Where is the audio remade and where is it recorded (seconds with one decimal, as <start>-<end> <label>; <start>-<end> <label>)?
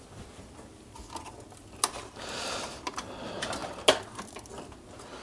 0.0-5.2 recorded